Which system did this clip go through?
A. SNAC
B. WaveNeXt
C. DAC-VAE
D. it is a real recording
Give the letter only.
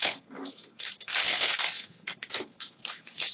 A